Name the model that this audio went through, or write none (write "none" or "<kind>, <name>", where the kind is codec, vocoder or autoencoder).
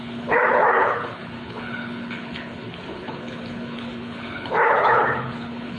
codec, HILCodec